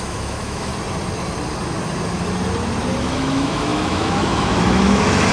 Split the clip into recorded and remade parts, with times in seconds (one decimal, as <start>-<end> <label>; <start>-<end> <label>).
0.0-0.7 remade; 0.7-3.0 recorded; 3.0-5.3 remade

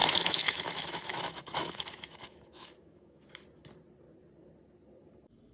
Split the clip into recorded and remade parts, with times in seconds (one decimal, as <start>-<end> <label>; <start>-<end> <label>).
0.0-3.3 remade; 3.3-5.5 recorded

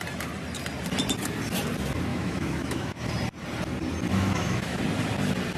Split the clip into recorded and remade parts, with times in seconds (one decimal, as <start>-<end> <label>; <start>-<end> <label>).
0.0-2.1 recorded; 2.1-3.1 remade; 3.1-4.1 recorded; 4.1-4.8 remade; 4.8-5.6 recorded

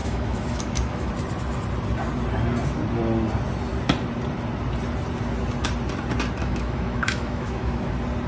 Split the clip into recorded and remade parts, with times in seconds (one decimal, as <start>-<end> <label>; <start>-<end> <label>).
0.0-1.1 remade; 1.1-6.4 recorded; 6.4-7.9 remade; 7.9-8.3 recorded